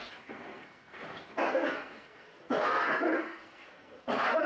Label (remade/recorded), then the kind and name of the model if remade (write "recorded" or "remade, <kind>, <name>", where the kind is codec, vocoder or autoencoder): remade, codec, SNAC